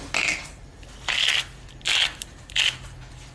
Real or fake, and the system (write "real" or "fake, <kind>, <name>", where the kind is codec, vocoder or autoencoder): real